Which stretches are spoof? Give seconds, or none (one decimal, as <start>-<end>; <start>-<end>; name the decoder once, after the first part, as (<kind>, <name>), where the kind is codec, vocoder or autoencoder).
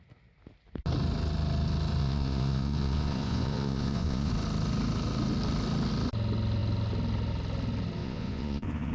2.0-4.3 (vocoder, Vocos); 8.0-8.9